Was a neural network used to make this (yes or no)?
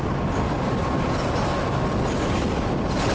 no